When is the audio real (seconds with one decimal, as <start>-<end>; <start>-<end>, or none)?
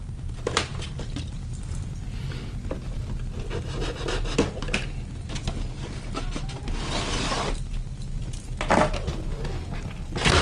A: 0.0-10.4